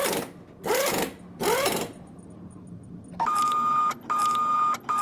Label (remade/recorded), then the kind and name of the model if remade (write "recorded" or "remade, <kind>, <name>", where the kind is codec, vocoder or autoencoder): recorded